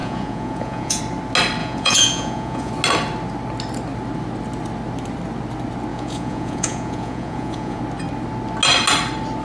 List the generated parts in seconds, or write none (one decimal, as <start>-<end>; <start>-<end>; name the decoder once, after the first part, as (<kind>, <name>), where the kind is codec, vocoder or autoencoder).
0.0-1.0 (vocoder, Vocos); 1.6-2.7; 5.9-7.8